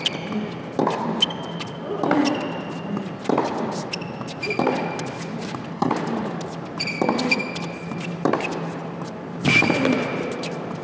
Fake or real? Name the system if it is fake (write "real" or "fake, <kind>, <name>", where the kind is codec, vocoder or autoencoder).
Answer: real